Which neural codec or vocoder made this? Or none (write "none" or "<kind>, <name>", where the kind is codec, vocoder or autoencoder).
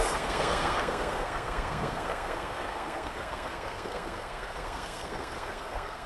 codec, SNAC